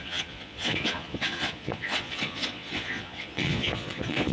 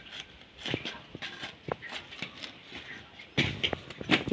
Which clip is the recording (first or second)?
second